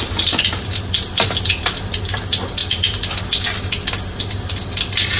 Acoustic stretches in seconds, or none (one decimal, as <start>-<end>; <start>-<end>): 0.0-5.2